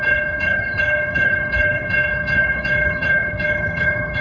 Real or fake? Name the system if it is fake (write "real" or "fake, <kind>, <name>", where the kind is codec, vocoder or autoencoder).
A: fake, codec, HILCodec